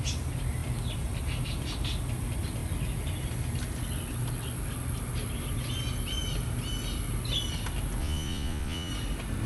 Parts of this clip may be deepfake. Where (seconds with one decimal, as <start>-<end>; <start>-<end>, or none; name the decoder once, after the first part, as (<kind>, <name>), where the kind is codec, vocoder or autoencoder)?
8.0-8.9 (vocoder, Vocos)